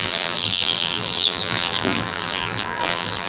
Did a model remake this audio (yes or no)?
yes